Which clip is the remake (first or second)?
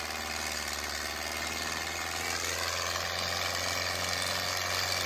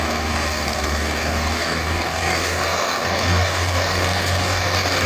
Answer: second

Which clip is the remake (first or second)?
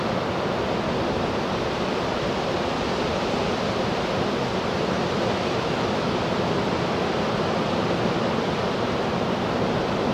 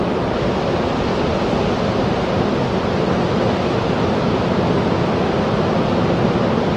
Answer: first